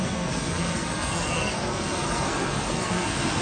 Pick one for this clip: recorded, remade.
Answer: remade